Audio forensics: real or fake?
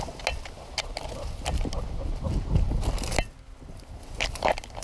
real